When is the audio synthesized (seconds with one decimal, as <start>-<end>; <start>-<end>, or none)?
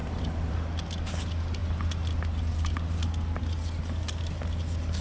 0.0-0.5